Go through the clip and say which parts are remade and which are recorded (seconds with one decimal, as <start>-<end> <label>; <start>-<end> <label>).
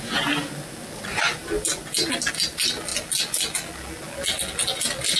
0.0-5.2 recorded